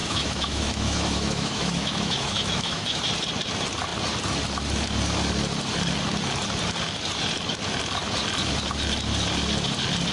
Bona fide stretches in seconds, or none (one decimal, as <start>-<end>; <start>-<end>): 3.0-10.1